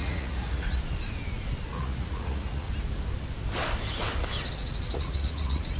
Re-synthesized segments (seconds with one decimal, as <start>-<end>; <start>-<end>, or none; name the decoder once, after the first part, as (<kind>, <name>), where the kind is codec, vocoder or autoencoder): 0.0-0.8 (vocoder, Vocos); 1.7-2.7; 4.6-5.8